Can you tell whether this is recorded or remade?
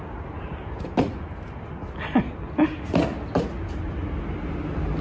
recorded